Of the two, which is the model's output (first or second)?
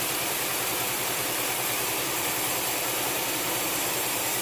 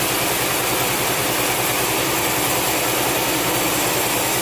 first